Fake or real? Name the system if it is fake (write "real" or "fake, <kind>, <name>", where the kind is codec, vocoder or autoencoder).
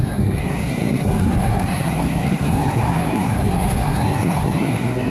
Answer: fake, codec, SNAC